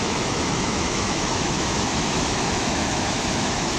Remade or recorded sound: remade